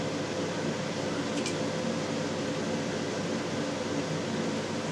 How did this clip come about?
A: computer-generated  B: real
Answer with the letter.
B